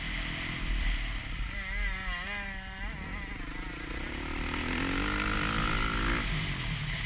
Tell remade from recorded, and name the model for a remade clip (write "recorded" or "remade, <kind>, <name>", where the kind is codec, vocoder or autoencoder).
recorded